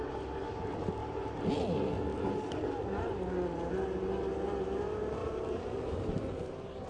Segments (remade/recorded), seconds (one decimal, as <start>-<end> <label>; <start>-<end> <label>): 0.0-1.0 recorded; 1.0-1.5 remade; 1.5-5.2 recorded; 5.2-6.4 remade; 6.4-6.9 recorded